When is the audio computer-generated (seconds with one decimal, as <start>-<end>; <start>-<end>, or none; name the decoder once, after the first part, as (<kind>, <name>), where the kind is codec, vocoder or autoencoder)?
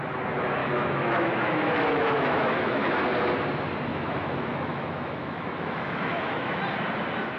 0.6-2.9 (autoencoder, DAC-VAE); 3.9-6.6